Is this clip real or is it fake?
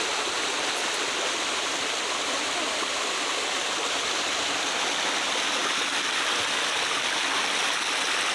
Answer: real